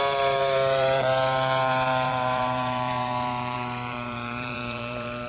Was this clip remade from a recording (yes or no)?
yes